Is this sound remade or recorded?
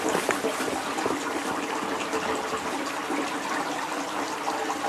recorded